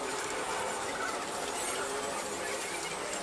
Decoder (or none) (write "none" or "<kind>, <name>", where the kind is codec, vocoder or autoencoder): none